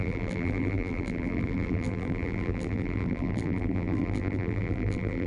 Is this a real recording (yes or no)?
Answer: no